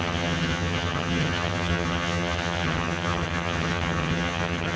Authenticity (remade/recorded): remade